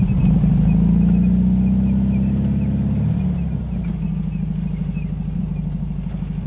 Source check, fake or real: real